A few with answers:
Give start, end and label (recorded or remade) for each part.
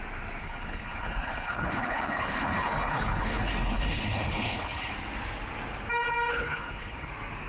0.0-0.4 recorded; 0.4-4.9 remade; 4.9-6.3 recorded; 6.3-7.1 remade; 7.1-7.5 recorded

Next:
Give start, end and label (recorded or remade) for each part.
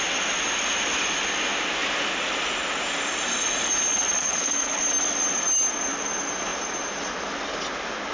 0.0-4.2 recorded; 4.2-4.8 remade; 4.8-8.1 recorded